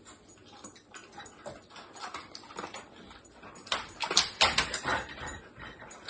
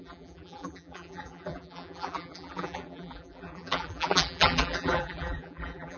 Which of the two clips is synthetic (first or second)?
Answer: second